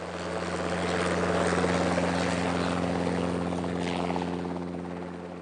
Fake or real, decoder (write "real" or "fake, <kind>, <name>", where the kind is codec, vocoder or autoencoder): real